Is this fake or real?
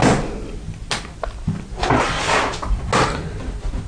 real